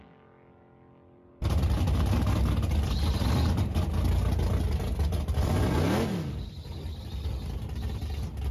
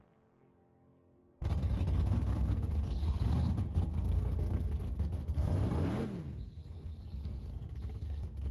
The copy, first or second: second